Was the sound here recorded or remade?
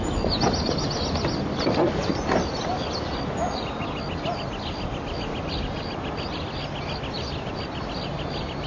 recorded